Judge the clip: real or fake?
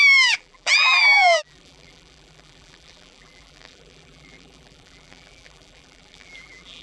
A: fake